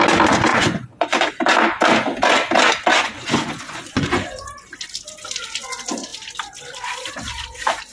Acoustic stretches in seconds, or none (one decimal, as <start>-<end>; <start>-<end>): 0.0-0.5; 1.3-2.9; 4.5-7.9